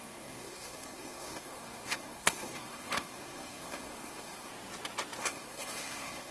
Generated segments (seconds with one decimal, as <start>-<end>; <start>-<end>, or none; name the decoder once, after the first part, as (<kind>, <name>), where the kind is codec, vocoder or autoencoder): 0.0-4.5 (codec, SNAC); 5.2-6.3